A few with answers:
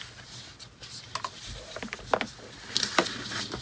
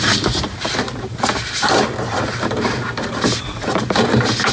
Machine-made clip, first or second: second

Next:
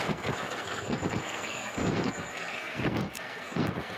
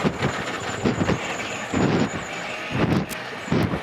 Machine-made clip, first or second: first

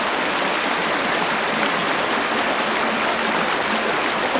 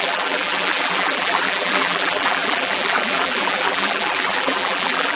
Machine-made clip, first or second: second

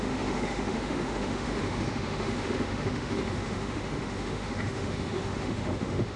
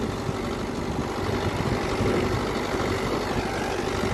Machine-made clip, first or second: first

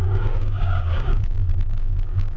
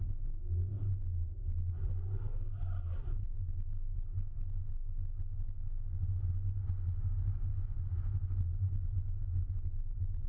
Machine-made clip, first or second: first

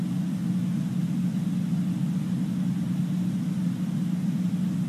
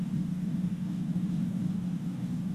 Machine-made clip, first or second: second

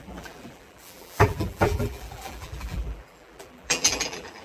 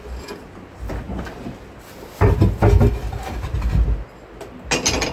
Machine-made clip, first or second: first